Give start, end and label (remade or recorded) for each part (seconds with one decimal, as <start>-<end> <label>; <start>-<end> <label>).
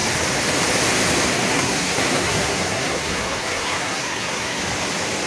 0.0-1.5 recorded; 1.5-4.6 remade; 4.6-5.3 recorded